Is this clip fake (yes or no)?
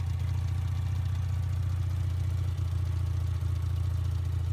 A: no